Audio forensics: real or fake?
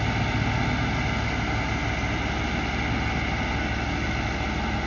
real